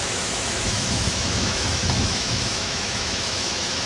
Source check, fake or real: fake